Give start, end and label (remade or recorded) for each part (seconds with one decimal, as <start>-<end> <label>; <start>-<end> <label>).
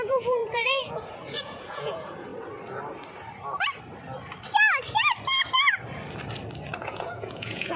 0.0-2.3 remade; 2.3-6.8 recorded; 6.8-7.8 remade